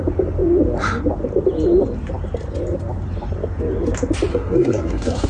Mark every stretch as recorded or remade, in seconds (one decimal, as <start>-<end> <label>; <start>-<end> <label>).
0.0-4.3 recorded; 4.3-5.3 remade